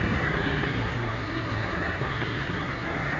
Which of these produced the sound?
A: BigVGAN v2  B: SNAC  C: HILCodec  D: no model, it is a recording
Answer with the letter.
B